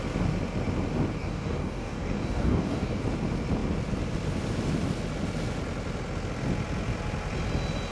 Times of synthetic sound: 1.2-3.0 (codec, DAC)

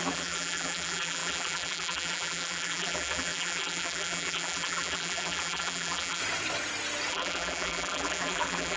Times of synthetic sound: 0.0-6.2 (vocoder, BigVGAN v2); 7.1-8.8

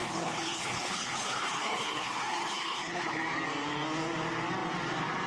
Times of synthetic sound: 0.0-3.2 (codec, HILCodec)

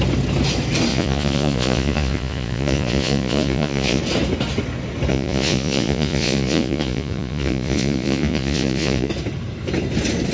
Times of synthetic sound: 0.9-4.0 (vocoder, Vocos); 5.1-9.1

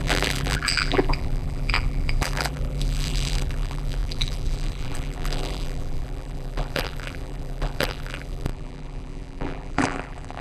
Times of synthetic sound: 0.0-10.4 (vocoder, BigVGAN v2)

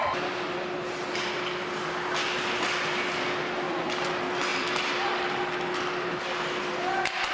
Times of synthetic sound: none

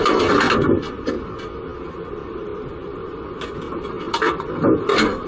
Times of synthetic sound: none